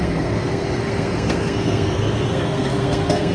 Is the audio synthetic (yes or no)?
yes